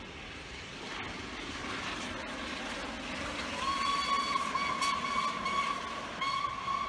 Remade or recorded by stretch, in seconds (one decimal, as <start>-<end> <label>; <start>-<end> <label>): 0.0-6.9 recorded